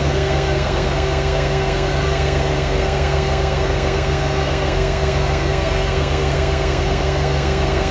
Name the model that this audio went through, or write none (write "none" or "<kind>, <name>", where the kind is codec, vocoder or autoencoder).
codec, SNAC